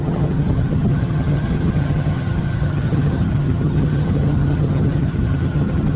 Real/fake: fake